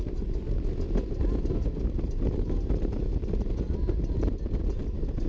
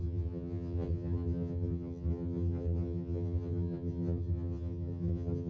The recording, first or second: first